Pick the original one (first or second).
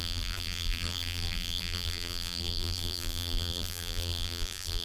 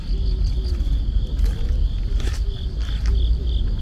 second